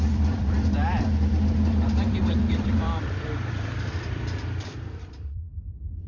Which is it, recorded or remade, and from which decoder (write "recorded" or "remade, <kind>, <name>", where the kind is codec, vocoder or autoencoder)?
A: remade, vocoder, BigVGAN v2